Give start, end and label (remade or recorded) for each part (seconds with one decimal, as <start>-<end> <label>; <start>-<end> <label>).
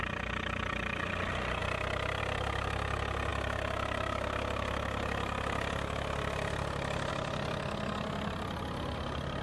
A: 0.0-9.4 recorded